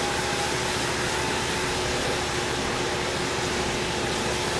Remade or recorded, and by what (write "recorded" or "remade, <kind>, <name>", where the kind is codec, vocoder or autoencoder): recorded